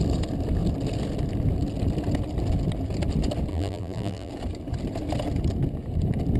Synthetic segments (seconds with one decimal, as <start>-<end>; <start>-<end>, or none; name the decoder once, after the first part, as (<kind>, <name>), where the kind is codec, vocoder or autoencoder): 3.5-4.3 (vocoder, BigVGAN v2)